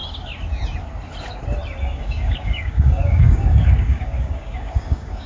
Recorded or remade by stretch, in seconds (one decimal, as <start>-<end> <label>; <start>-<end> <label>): 0.0-1.9 recorded; 1.9-5.3 remade